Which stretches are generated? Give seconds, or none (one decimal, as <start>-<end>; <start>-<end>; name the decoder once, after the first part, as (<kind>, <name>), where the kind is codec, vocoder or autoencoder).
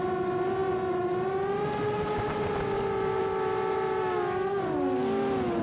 none